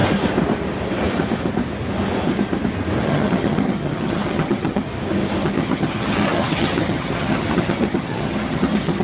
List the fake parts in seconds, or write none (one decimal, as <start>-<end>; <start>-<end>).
3.0-4.9; 5.4-9.0